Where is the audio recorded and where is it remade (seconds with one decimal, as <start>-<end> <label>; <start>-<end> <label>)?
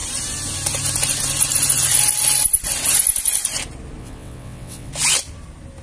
0.0-4.0 recorded; 4.0-4.9 remade; 4.9-5.8 recorded